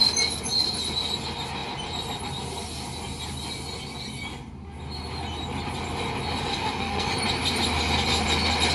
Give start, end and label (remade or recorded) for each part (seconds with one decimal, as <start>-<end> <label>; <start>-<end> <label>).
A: 0.0-6.5 recorded; 6.5-7.1 remade; 7.1-8.7 recorded